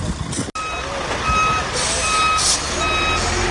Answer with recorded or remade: recorded